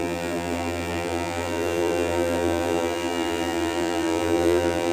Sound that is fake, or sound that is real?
fake